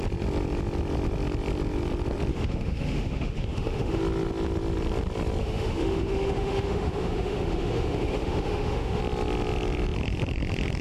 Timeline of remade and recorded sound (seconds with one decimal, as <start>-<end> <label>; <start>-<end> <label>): 0.0-2.3 recorded; 2.3-4.0 remade; 4.0-5.4 recorded; 5.4-9.0 remade; 9.0-10.8 recorded